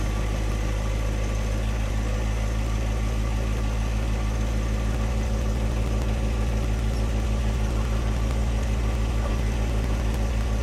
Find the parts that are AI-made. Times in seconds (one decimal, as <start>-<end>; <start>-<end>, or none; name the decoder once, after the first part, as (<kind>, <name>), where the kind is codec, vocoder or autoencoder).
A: none